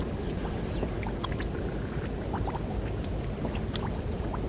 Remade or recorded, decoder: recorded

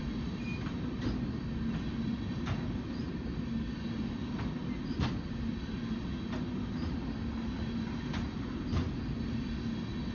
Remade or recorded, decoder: recorded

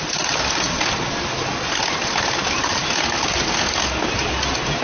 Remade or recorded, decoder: recorded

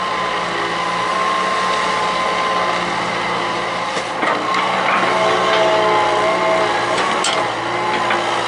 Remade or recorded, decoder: recorded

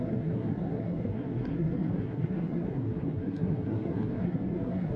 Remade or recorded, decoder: remade, codec, SNAC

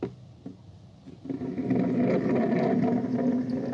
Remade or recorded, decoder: recorded